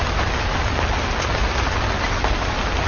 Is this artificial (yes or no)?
no